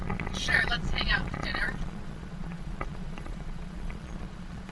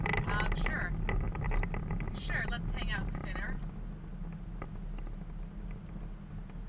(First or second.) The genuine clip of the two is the second